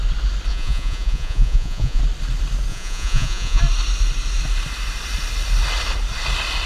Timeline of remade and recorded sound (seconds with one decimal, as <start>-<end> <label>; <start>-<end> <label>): 0.0-0.5 recorded; 0.5-2.0 remade; 2.0-2.7 recorded; 2.7-3.6 remade; 3.6-6.7 recorded

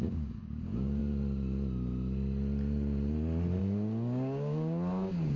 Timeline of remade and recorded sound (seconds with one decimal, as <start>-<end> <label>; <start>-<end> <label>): 0.0-1.0 remade; 1.0-3.6 recorded; 3.6-5.4 remade

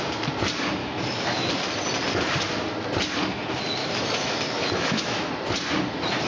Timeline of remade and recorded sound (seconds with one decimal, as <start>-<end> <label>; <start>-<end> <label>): 0.0-0.8 recorded; 0.8-1.5 remade; 1.5-3.8 recorded; 3.8-5.3 remade; 5.3-6.3 recorded

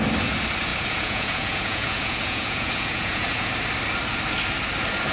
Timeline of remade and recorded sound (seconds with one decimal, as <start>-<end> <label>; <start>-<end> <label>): 0.0-0.7 recorded; 0.7-3.5 remade; 3.5-5.1 recorded

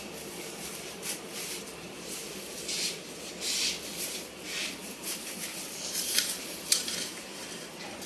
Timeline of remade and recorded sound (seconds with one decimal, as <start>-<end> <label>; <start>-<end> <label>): 0.0-0.7 recorded; 0.7-1.9 remade; 1.9-4.8 recorded; 4.8-7.3 remade; 7.3-8.1 recorded

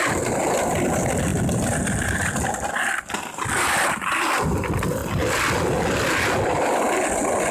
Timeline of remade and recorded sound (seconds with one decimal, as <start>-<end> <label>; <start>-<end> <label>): 0.0-7.5 recorded